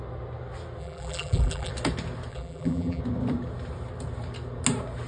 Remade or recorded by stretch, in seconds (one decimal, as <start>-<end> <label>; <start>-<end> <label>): 0.0-0.8 recorded; 0.8-1.7 remade; 1.7-2.3 recorded; 2.3-3.0 remade; 3.0-5.1 recorded